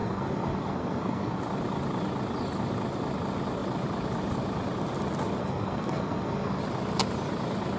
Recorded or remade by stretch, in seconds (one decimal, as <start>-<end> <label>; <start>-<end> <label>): 0.0-1.4 remade; 1.4-5.4 recorded; 5.4-6.6 remade; 6.6-7.8 recorded